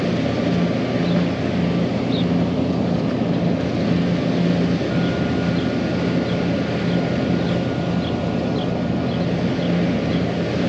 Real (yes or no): yes